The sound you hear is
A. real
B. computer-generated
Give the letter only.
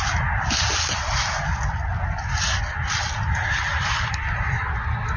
A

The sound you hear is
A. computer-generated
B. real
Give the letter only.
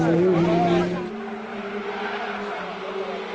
B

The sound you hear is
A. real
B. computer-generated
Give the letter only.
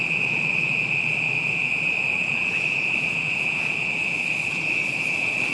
B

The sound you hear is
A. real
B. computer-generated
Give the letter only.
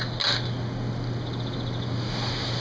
A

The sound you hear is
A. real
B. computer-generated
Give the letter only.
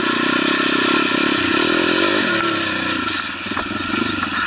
A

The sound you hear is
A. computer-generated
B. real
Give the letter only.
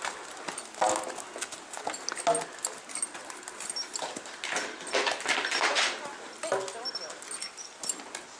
B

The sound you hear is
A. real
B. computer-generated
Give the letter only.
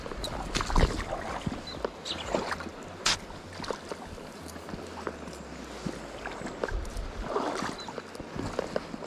A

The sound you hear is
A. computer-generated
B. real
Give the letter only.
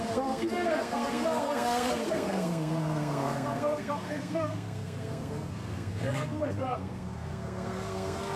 A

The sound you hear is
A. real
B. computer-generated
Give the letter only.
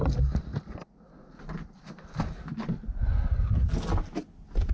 A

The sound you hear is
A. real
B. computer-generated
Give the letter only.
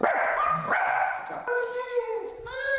B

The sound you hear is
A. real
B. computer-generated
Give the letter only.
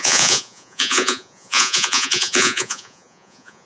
B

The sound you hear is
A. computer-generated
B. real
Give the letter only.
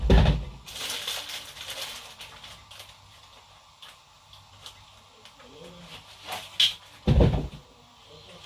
B